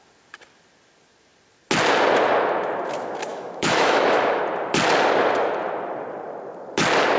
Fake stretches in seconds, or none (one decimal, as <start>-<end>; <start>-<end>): 3.3-4.4